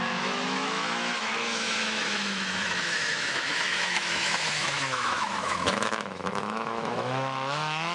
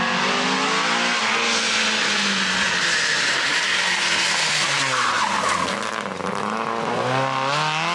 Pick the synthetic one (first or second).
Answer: first